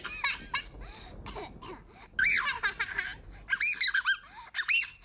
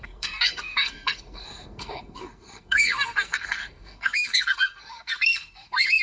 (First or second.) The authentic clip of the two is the first